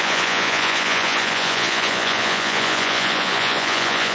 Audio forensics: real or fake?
fake